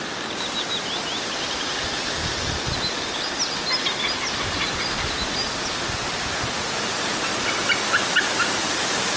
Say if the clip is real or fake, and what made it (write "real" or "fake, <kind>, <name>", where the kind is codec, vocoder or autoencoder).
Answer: real